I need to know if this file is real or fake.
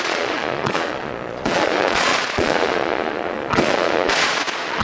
fake